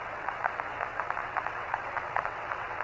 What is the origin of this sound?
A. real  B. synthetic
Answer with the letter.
B